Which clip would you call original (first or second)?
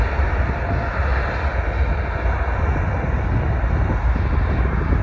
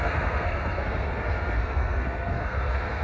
first